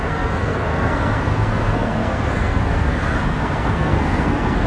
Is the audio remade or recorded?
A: remade